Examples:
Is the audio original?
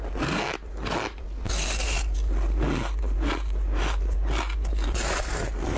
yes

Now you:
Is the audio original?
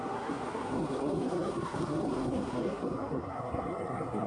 no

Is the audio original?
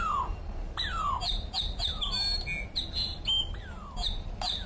yes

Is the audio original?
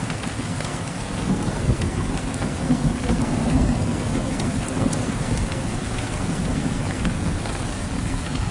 no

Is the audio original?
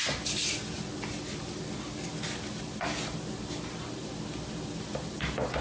yes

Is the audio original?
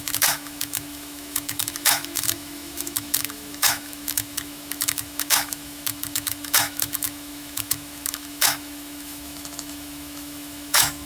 no